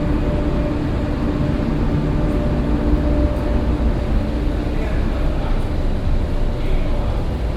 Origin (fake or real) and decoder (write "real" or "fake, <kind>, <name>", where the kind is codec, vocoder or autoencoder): real